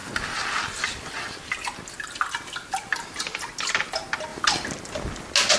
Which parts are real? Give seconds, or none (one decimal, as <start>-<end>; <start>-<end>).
0.0-5.6